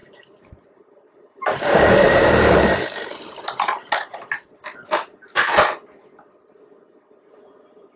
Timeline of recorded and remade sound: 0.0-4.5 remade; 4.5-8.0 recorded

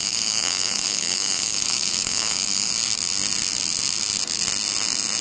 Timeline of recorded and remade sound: 0.0-2.7 remade; 2.7-5.2 recorded

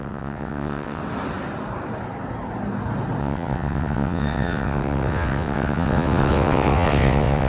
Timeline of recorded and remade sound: 0.0-1.0 remade; 1.0-3.2 recorded; 3.2-7.5 remade

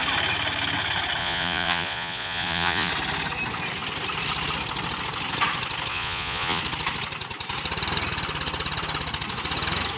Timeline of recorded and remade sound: 0.0-1.2 recorded; 1.2-2.9 remade; 2.9-5.9 recorded; 5.9-6.6 remade; 6.6-10.0 recorded

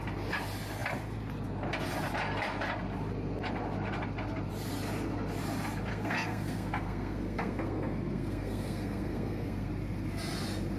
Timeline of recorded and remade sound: 0.0-5.9 recorded; 5.9-9.7 remade; 9.7-10.8 recorded

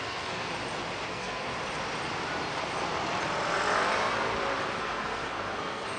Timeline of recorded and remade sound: 0.0-0.5 remade; 0.5-1.1 recorded; 1.1-1.5 remade; 1.5-4.8 recorded; 4.8-6.0 remade

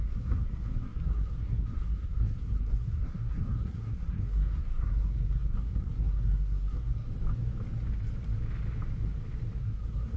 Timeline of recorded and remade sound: 0.0-7.1 remade; 7.1-9.6 recorded; 9.6-10.2 remade